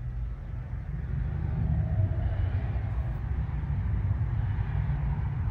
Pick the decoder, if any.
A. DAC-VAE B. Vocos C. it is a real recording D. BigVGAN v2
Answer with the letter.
C